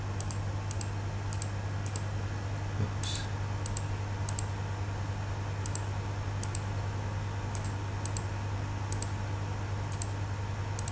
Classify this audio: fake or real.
real